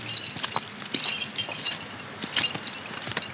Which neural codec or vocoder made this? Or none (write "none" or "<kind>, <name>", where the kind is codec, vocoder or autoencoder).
none